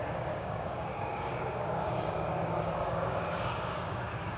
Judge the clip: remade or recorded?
remade